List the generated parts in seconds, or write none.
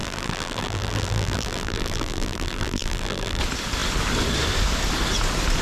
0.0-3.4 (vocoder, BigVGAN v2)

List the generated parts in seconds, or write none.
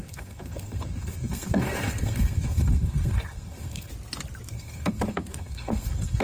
0.0-3.9 (codec, SNAC); 4.5-6.2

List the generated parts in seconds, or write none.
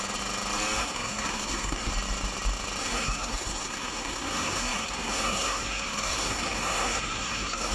0.8-1.9 (codec, SNAC); 2.8-7.7